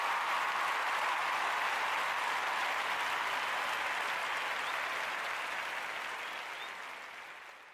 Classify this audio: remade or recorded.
recorded